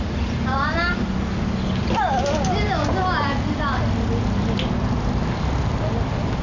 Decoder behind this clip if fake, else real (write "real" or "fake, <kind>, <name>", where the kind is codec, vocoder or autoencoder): real